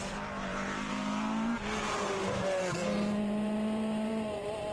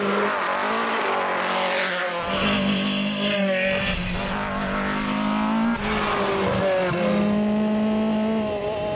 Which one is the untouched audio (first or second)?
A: second